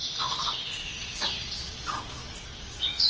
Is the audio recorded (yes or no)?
no